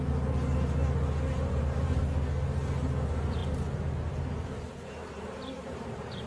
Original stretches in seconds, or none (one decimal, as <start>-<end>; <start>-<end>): 0.0-1.3; 2.0-3.4